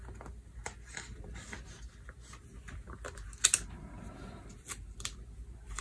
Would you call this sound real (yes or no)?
yes